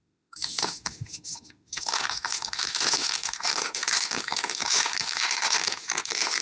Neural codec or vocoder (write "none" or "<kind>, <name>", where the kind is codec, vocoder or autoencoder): autoencoder, DAC-VAE